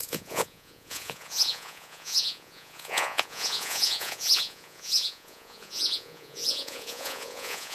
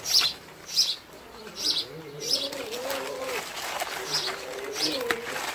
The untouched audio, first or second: second